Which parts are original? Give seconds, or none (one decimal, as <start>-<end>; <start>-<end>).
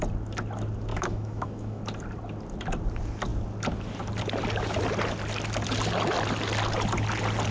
0.0-0.9; 1.8-7.5